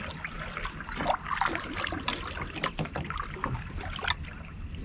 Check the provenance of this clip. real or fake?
real